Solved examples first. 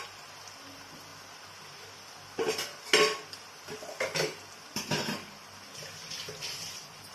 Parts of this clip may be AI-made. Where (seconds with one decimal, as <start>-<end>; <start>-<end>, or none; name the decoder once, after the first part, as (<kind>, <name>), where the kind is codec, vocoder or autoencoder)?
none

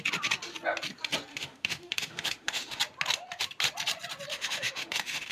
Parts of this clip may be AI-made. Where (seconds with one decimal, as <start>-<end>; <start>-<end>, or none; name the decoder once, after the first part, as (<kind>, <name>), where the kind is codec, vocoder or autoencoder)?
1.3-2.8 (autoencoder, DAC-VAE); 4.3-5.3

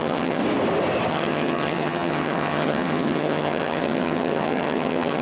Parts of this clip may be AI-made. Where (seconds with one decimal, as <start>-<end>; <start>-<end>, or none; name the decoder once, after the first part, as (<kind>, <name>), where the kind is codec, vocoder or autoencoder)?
0.0-0.4 (vocoder, HiFi-GAN); 1.1-5.2